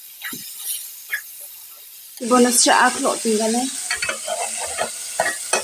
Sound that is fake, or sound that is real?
real